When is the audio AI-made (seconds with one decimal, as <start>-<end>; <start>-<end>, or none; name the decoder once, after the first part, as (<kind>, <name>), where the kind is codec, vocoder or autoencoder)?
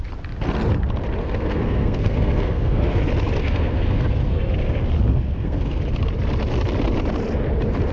1.2-3.0 (codec, SNAC); 3.4-4.5; 5.1-5.8